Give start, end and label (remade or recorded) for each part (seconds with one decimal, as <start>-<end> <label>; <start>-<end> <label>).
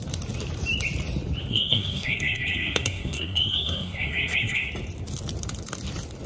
0.0-1.5 recorded; 1.5-4.7 remade; 4.7-6.3 recorded